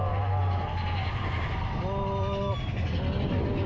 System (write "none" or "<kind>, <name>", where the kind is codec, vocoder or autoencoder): none